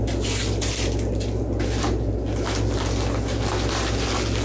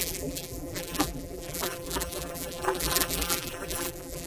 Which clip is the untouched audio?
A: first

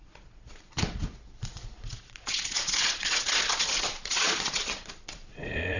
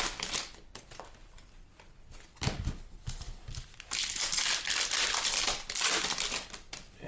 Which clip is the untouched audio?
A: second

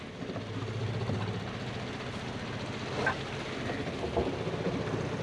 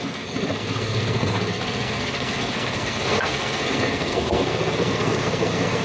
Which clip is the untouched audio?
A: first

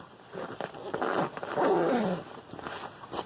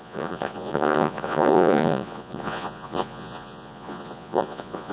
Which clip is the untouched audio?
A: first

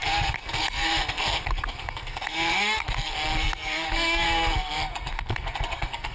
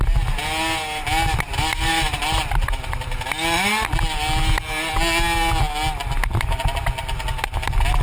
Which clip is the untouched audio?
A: second